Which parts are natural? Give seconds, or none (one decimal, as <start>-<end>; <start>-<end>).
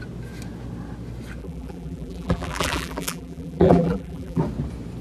0.0-1.4; 4.4-5.0